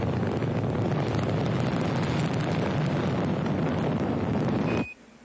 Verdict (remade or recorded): recorded